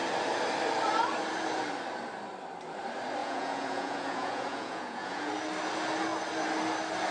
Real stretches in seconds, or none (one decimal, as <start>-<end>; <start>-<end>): 0.0-3.2; 5.3-7.1